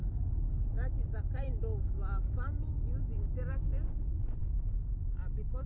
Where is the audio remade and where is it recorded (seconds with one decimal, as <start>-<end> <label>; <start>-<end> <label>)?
0.0-5.7 recorded